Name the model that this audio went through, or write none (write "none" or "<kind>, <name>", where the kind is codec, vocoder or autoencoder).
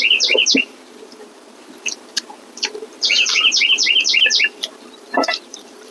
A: vocoder, BigVGAN v2